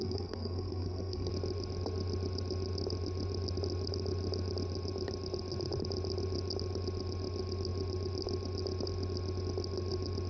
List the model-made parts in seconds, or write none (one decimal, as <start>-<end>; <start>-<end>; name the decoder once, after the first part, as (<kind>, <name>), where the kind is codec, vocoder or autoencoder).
0.0-1.3 (codec, SNAC)